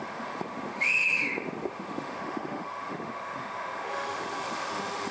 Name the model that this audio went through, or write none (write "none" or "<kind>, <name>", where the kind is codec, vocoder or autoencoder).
autoencoder, DAC-VAE